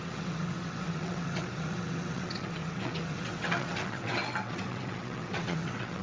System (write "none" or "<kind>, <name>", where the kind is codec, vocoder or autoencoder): vocoder, WaveNeXt